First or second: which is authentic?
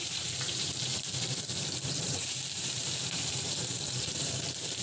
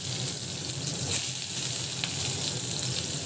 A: second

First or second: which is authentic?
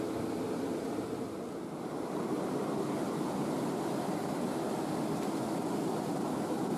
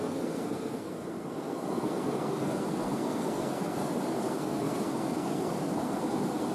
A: first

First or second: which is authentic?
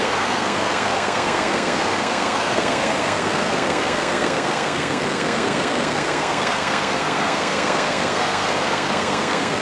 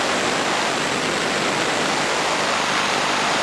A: second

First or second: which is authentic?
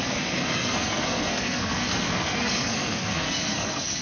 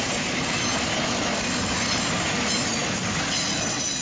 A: second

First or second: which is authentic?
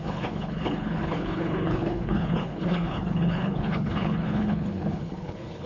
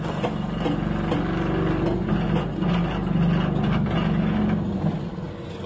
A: second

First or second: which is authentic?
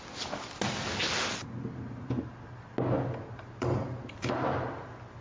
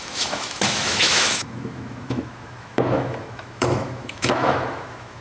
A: first